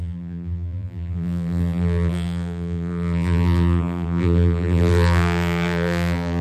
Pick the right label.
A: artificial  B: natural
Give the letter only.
A